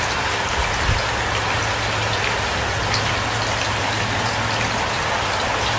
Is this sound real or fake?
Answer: real